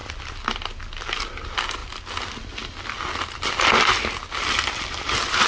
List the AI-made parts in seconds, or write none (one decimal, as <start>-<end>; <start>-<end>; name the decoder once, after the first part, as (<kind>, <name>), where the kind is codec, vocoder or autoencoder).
none